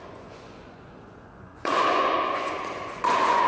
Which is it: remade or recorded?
remade